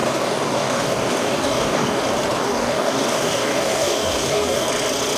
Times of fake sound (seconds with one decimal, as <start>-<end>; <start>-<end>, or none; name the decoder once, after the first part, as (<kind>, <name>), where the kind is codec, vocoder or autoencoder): 0.0-2.0 (codec, DAC); 2.4-4.7